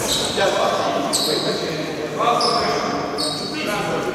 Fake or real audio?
real